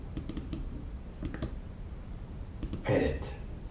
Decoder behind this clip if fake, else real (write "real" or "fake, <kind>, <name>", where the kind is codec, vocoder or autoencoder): fake, vocoder, BigVGAN v2